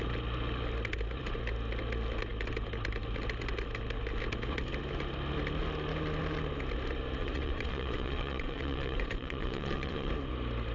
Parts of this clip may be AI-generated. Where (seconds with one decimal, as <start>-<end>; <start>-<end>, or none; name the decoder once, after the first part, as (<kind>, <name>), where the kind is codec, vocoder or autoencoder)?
7.2-10.1 (vocoder, WaveNeXt)